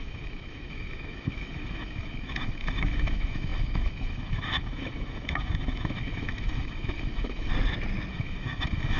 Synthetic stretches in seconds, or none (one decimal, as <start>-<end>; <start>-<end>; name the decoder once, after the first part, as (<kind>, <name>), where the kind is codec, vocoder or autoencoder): 0.0-7.5 (autoencoder, DAC-VAE); 8.1-9.0